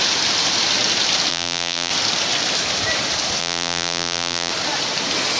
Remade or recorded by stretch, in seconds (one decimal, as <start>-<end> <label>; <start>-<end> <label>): 0.0-1.3 recorded; 1.3-1.9 remade; 1.9-3.4 recorded; 3.4-4.5 remade; 4.5-5.4 recorded